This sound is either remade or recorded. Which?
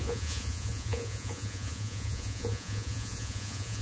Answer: remade